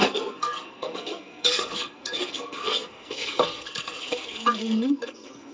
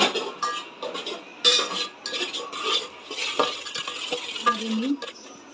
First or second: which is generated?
first